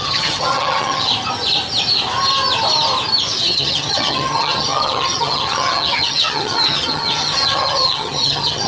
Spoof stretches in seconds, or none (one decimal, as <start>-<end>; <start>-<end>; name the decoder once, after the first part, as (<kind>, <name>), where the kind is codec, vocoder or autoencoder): 0.0-1.1 (vocoder, HiFi-GAN); 3.4-8.7